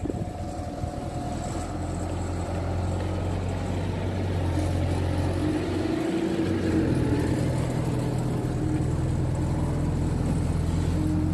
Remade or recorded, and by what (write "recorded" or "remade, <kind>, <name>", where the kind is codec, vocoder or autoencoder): recorded